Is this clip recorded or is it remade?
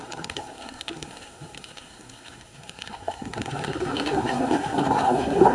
remade